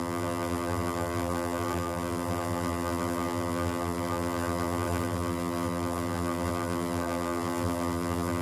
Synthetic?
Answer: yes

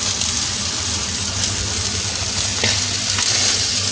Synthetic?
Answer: no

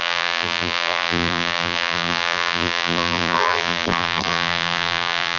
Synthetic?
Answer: yes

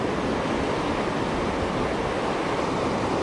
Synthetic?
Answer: no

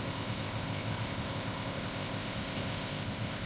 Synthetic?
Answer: yes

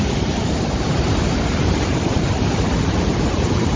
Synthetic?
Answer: yes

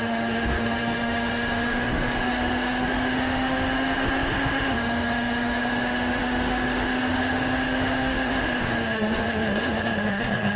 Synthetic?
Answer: yes